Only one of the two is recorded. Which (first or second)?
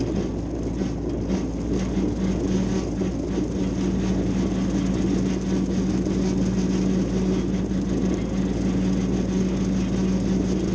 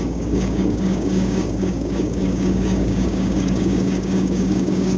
first